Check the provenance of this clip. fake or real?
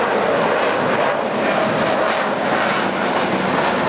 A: real